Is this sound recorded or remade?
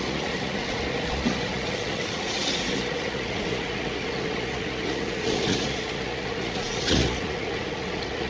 remade